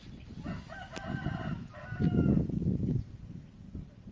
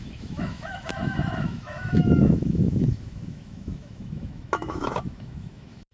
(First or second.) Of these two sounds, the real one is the first